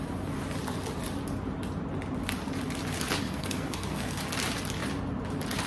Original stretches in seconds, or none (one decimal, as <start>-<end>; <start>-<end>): 0.0-3.2; 4.2-5.7